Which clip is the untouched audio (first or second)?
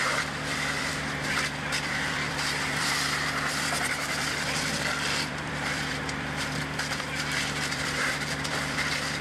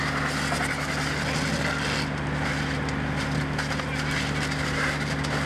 second